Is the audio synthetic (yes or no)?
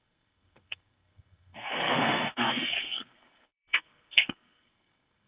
yes